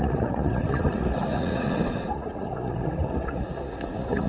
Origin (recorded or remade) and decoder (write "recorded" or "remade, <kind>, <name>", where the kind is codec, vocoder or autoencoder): remade, vocoder, Vocos